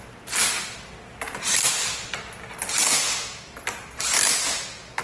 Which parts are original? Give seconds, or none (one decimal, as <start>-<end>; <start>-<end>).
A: 0.0-2.8; 4.6-5.0